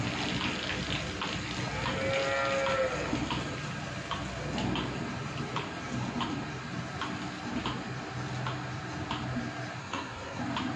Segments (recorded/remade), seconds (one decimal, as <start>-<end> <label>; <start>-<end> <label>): 0.0-9.8 recorded; 9.8-10.4 remade; 10.4-10.8 recorded